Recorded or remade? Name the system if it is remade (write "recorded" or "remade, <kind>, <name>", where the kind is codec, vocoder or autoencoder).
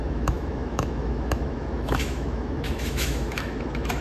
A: remade, autoencoder, DAC-VAE